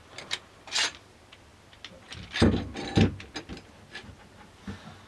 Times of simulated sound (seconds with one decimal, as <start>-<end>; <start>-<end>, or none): none